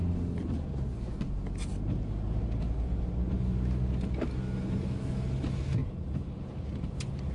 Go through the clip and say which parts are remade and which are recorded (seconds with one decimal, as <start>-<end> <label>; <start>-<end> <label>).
0.0-5.8 recorded; 5.8-6.4 remade; 6.4-7.3 recorded